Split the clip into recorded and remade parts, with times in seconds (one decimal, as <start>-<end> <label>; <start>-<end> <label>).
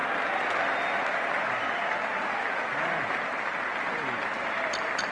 0.0-5.1 recorded